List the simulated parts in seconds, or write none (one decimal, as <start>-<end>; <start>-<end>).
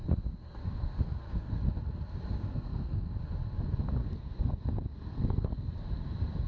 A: 0.0-1.6; 2.4-3.1; 4.0-5.7